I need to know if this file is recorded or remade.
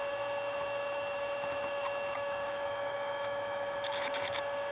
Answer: remade